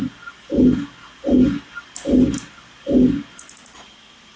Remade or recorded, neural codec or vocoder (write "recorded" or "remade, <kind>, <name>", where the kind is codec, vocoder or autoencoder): recorded